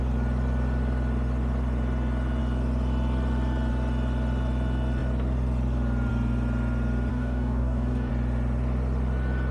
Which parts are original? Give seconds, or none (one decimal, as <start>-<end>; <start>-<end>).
0.0-7.1; 8.1-9.5